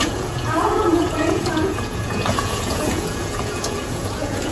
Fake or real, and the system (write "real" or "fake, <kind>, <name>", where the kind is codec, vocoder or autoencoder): fake, vocoder, Vocos